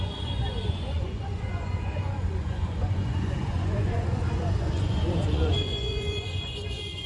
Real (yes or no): no